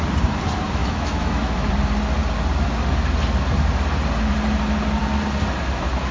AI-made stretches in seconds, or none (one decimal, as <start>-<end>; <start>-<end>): 0.8-1.7